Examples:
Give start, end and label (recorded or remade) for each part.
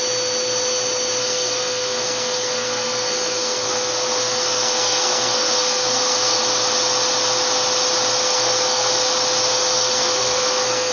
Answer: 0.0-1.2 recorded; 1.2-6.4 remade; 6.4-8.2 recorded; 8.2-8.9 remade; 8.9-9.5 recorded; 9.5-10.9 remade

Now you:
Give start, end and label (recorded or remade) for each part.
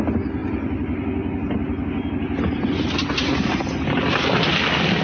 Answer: 0.0-5.0 recorded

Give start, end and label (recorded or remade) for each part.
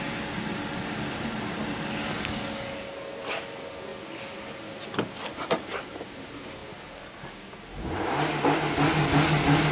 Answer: 0.0-9.7 recorded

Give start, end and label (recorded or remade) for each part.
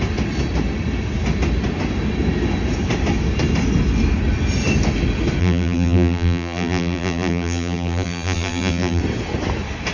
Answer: 0.0-5.4 recorded; 5.4-9.0 remade; 9.0-9.9 recorded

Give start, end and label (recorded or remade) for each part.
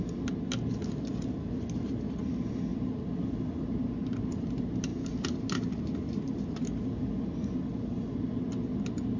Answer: 0.0-9.2 recorded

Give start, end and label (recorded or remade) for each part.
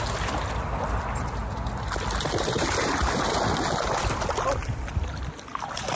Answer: 0.0-6.0 recorded